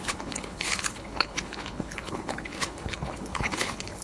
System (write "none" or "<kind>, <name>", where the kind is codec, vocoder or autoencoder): codec, HILCodec